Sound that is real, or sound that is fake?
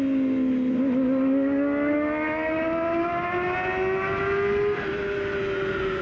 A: real